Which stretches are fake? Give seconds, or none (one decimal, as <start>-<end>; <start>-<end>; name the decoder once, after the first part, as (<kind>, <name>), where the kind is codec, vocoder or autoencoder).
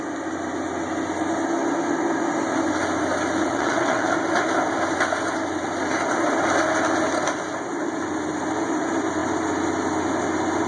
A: 3.4-4.1 (vocoder, WaveNeXt)